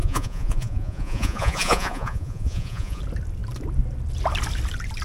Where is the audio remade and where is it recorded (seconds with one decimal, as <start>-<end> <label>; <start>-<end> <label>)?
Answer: 0.0-3.0 remade; 3.0-5.0 recorded